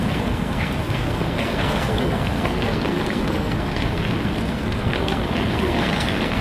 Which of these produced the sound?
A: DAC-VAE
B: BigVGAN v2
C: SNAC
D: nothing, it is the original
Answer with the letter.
C